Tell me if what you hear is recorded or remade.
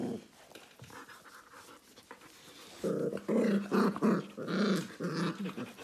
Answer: recorded